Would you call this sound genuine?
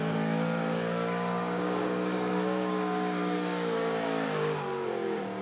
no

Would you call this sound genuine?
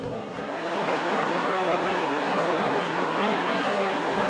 no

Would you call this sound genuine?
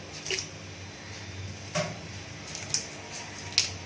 yes